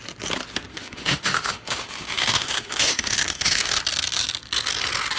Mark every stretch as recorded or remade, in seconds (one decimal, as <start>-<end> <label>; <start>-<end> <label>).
0.0-0.7 recorded; 0.7-3.8 remade; 3.8-5.2 recorded